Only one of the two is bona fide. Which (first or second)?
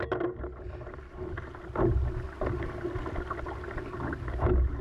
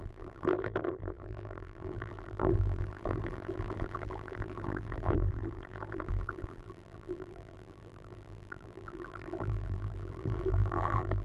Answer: first